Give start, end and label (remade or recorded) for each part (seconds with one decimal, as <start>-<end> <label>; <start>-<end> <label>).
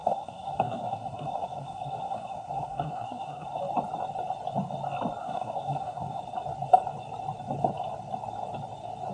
0.0-3.6 remade; 3.6-5.2 recorded; 5.2-6.2 remade; 6.2-9.1 recorded